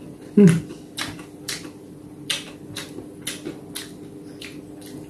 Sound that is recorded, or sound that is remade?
recorded